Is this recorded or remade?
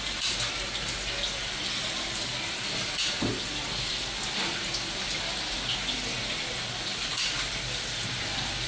recorded